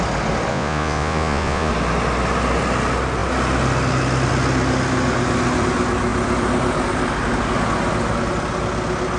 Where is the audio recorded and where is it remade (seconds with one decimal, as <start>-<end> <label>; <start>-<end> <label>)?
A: 0.0-0.5 recorded; 0.5-1.7 remade; 1.7-9.2 recorded